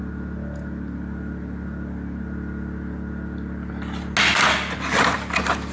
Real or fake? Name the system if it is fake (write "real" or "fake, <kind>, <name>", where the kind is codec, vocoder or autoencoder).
real